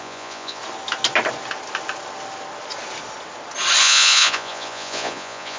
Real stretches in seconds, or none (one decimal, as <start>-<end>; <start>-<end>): 0.6-3.8